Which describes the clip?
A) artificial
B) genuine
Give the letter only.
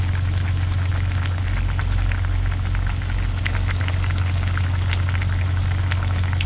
B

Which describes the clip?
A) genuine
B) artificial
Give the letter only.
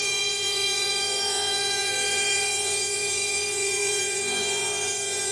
B